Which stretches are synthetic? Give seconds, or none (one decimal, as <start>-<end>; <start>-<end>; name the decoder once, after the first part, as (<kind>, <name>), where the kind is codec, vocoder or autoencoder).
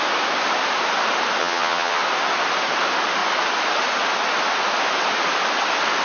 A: 1.4-2.0 (vocoder, HiFi-GAN)